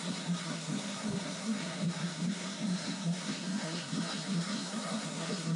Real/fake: fake